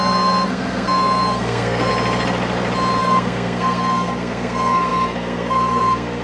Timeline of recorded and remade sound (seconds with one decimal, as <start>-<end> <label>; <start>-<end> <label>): 0.0-1.9 remade; 1.9-3.0 recorded; 3.0-6.2 remade